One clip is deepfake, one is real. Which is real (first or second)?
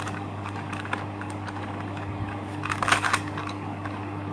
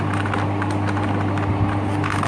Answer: second